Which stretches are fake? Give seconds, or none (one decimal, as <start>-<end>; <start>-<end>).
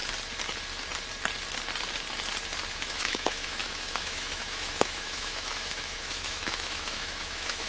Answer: 2.7-7.7